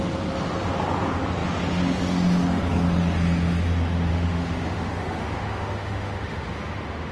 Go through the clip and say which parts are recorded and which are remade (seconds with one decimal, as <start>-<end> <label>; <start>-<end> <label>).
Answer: 0.0-4.1 recorded; 4.1-7.1 remade